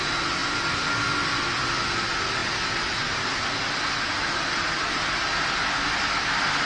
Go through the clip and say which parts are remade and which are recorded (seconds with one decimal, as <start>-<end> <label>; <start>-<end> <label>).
0.0-6.7 recorded